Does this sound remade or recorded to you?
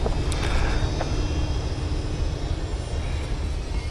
recorded